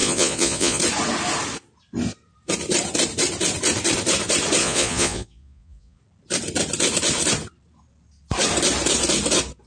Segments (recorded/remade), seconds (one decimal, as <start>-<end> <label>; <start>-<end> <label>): 0.0-0.8 remade; 0.8-4.6 recorded; 4.6-6.0 remade; 6.0-9.7 recorded